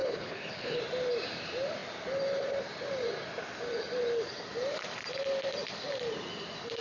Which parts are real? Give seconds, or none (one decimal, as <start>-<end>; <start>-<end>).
0.8-6.8